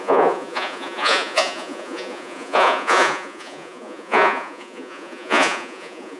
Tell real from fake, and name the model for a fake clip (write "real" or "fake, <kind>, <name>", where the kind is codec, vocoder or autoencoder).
fake, vocoder, Vocos